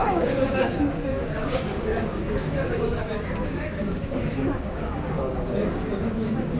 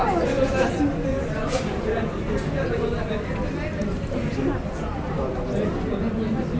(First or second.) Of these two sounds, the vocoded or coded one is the first